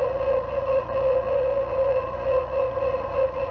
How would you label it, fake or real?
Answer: fake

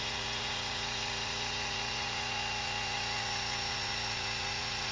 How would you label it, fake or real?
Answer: fake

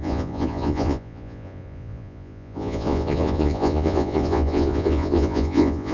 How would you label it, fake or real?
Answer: fake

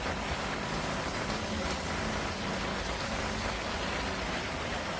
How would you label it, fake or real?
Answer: real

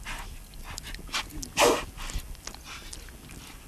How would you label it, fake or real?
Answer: real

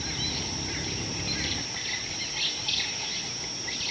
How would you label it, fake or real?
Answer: real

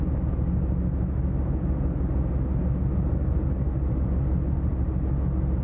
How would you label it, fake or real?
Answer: real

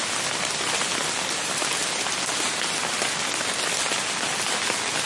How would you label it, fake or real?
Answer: real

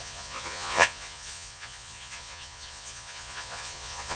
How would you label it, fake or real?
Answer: fake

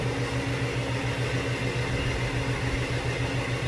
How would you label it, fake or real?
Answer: real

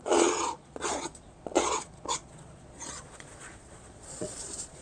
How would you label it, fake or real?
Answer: fake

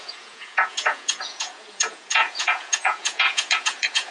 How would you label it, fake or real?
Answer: fake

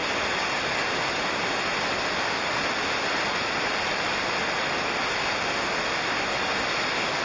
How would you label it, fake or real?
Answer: real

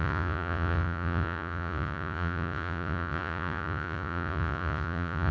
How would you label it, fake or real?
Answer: fake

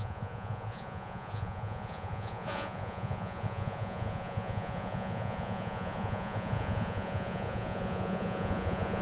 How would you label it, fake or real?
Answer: fake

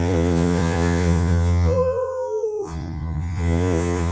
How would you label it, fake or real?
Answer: fake